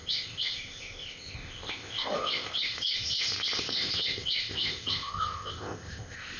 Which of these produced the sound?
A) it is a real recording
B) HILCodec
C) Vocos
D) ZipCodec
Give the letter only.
D